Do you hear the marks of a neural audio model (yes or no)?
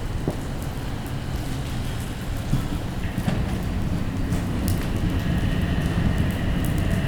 no